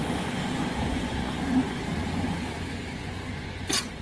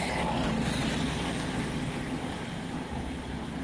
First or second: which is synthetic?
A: first